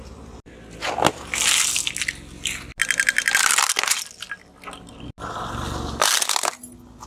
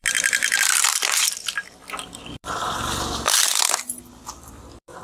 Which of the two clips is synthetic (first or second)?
second